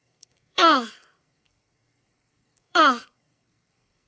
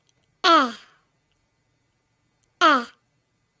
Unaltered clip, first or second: second